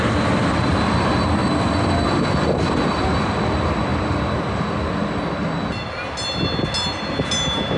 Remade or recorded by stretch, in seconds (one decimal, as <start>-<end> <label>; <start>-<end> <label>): 0.0-7.8 recorded